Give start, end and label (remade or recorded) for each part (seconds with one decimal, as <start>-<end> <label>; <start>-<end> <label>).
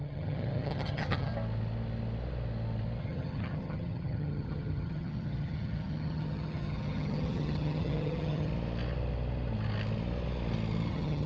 0.0-1.3 remade; 1.3-3.0 recorded; 3.0-8.5 remade; 8.5-10.9 recorded; 10.9-11.3 remade